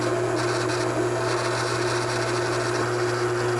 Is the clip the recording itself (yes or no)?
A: yes